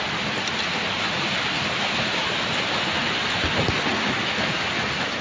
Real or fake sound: real